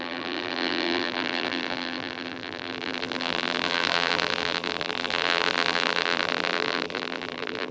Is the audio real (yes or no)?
no